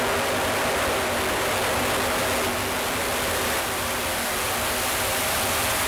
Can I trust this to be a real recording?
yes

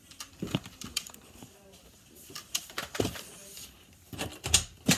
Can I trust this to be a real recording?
no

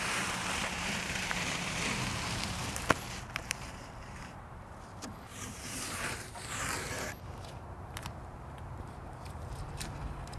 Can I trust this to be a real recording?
no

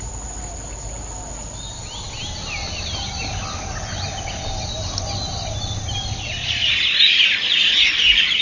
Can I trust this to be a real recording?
yes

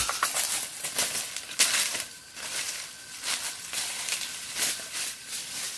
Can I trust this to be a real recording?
no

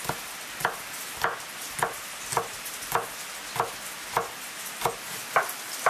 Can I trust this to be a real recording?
yes